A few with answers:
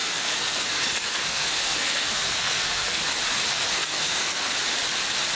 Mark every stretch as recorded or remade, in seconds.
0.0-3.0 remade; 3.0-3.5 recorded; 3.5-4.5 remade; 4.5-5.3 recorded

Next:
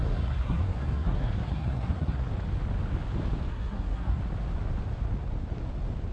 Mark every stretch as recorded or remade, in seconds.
0.0-2.3 remade; 2.3-3.5 recorded; 3.5-4.2 remade; 4.2-6.1 recorded

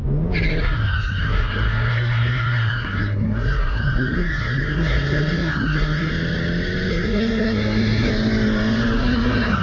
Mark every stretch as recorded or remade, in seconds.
0.0-0.6 recorded; 0.6-6.1 remade; 6.1-6.9 recorded; 6.9-8.1 remade; 8.1-9.0 recorded; 9.0-9.6 remade

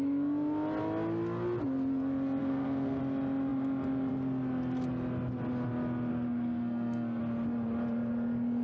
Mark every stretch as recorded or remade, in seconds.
0.0-2.4 recorded; 2.4-3.0 remade; 3.0-6.1 recorded; 6.1-7.2 remade; 7.2-8.6 recorded

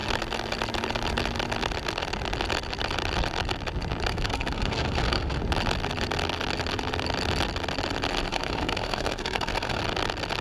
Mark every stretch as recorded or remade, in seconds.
0.0-4.1 recorded; 4.1-5.4 remade; 5.4-8.3 recorded; 8.3-9.8 remade; 9.8-10.4 recorded

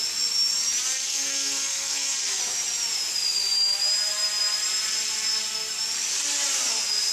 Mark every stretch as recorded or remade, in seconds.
0.0-1.1 recorded; 1.1-2.4 remade; 2.4-7.1 recorded